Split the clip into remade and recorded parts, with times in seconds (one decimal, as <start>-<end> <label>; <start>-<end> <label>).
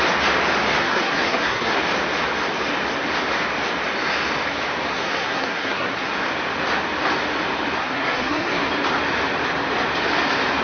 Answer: 0.0-0.8 recorded; 0.8-1.8 remade; 1.8-4.9 recorded; 4.9-6.1 remade; 6.1-7.8 recorded; 7.8-8.7 remade; 8.7-10.6 recorded